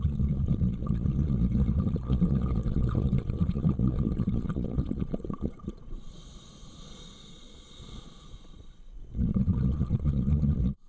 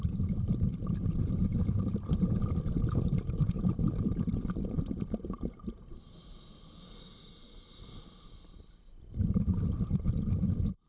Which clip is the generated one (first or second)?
first